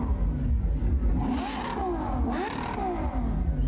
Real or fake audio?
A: real